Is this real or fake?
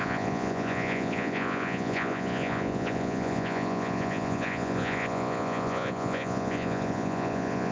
fake